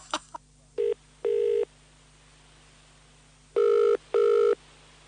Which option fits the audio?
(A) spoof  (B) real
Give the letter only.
B